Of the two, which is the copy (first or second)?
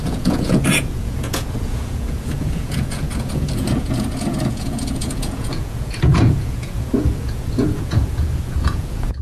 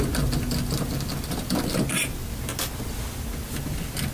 first